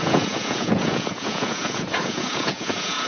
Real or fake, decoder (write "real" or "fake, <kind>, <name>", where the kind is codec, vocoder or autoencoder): fake, vocoder, Vocos